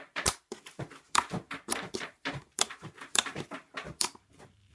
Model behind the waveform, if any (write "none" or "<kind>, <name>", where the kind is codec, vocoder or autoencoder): vocoder, BigVGAN v2